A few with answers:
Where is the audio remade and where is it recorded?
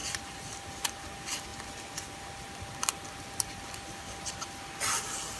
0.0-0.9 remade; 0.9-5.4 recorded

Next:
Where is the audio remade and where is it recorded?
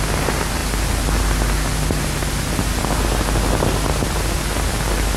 0.0-5.2 recorded